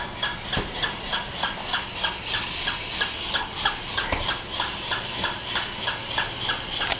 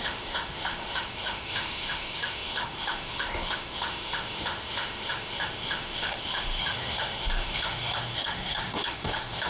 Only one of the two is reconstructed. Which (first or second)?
second